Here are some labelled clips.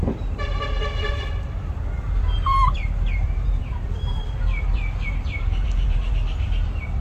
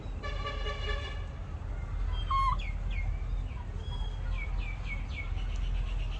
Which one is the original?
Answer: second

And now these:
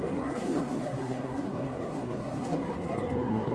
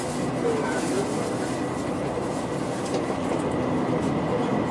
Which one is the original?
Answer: second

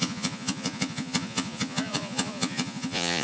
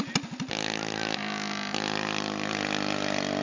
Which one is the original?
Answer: second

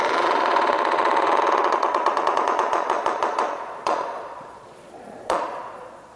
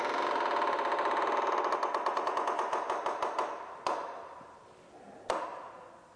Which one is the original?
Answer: second